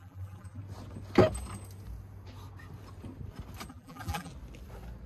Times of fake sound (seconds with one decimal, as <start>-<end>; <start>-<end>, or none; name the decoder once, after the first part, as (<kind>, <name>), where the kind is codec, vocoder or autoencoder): 0.0-0.6 (vocoder, BigVGAN v2); 3.7-4.3